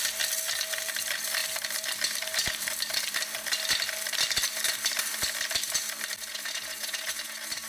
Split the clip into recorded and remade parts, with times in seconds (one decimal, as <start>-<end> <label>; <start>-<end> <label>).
0.0-7.7 recorded